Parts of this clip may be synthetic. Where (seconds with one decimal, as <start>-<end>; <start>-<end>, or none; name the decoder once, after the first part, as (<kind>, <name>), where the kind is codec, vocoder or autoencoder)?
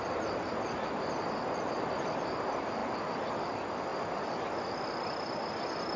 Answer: none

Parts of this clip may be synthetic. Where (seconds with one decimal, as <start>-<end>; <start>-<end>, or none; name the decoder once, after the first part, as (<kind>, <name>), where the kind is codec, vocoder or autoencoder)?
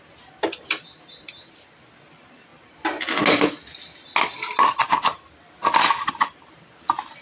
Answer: 5.0-6.1 (vocoder, BigVGAN v2)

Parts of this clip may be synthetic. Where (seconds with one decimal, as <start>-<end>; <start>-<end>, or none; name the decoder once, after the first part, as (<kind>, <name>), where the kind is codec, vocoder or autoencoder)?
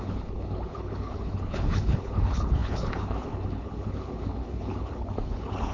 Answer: 0.0-5.7 (codec, HILCodec)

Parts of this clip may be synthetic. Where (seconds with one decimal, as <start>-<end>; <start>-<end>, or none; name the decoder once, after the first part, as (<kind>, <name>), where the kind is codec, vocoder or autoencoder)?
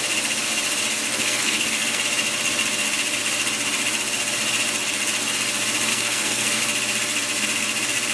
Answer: 1.1-2.0 (codec, SNAC); 5.9-6.6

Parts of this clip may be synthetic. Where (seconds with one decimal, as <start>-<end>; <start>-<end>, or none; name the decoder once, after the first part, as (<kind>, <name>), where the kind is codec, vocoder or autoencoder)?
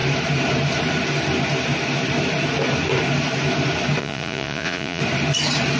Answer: 4.0-5.0 (vocoder, Vocos)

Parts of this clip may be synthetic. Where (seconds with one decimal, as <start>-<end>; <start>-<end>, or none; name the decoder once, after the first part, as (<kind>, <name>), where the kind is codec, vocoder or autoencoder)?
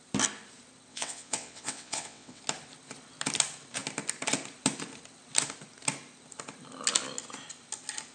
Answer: 0.9-2.4 (vocoder, WaveNeXt)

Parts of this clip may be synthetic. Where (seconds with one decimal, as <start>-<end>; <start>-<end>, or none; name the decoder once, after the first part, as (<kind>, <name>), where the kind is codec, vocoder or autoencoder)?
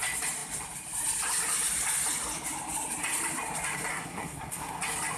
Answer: 3.9-4.8 (codec, SNAC)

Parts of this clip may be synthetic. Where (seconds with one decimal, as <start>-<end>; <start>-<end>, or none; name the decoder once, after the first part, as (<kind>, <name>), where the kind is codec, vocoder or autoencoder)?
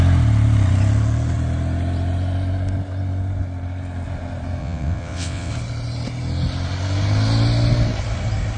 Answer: 4.6-5.5 (vocoder, WaveNeXt)